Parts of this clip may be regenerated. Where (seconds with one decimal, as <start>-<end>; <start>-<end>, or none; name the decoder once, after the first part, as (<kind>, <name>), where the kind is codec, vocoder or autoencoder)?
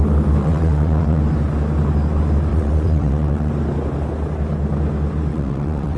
0.4-1.2 (vocoder, WaveNeXt); 2.5-3.5; 5.3-6.0